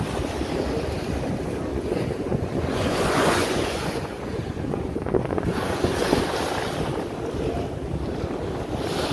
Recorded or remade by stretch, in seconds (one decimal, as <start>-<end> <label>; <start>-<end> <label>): 0.0-1.7 recorded; 1.7-6.2 remade; 6.2-9.1 recorded